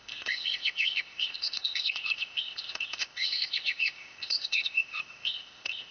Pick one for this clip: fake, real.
fake